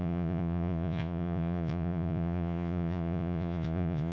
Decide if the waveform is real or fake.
fake